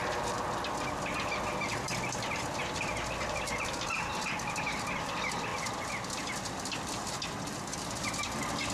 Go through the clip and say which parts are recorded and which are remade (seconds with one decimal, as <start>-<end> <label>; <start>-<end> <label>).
0.0-8.7 recorded